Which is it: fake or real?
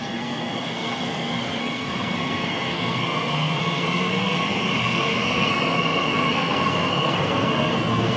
fake